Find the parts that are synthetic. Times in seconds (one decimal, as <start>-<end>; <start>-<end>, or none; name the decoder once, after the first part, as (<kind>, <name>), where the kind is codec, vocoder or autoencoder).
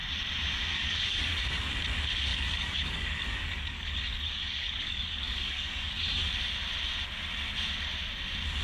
0.7-1.7 (codec, DAC); 2.3-6.2